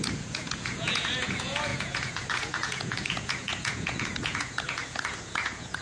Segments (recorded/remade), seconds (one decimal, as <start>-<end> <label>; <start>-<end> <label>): 0.0-5.8 remade